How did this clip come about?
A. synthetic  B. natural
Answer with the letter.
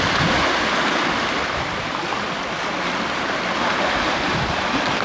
B